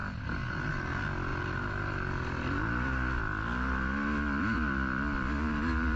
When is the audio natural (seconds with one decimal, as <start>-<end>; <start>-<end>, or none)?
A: 0.0-6.0